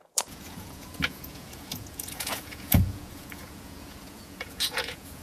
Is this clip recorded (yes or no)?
no